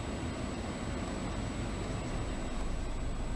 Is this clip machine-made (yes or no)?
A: no